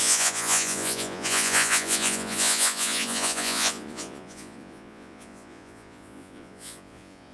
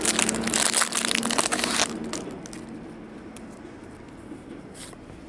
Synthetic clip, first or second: first